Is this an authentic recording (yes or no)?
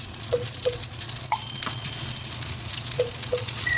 no